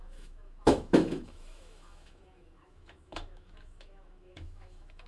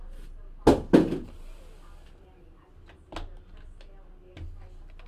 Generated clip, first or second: first